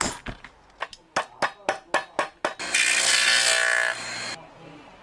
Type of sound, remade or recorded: recorded